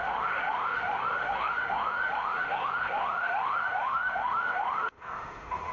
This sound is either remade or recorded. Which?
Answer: remade